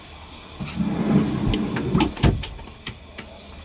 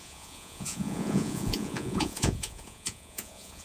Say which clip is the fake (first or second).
second